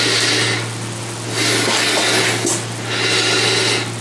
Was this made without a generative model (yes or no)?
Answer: yes